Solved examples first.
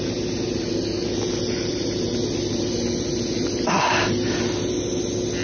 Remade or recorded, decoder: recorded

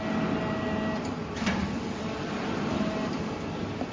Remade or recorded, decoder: recorded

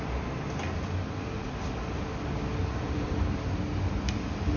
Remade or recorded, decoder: recorded